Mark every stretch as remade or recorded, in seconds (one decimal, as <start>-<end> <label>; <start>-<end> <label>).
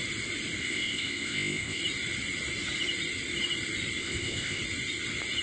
0.0-0.6 recorded; 0.6-1.8 remade; 1.8-4.0 recorded; 4.0-4.6 remade; 4.6-5.4 recorded